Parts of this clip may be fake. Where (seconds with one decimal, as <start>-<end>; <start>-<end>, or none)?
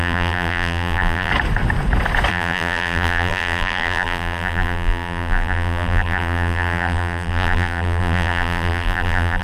0.0-1.3; 2.3-9.4